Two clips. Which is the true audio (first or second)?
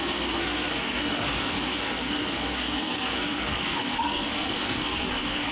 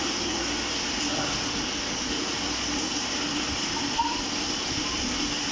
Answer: second